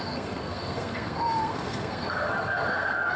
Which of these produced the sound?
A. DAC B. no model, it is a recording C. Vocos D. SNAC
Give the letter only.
D